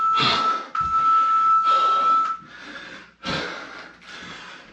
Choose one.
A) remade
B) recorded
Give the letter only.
B